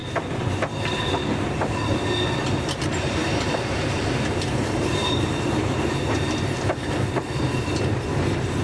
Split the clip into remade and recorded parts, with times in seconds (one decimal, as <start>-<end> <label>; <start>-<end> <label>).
0.0-5.0 recorded; 5.0-6.9 remade; 6.9-8.6 recorded